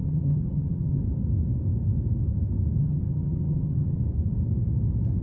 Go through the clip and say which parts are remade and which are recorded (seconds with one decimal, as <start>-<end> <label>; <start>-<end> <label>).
0.0-1.0 remade; 1.0-2.8 recorded; 2.8-4.0 remade; 4.0-5.2 recorded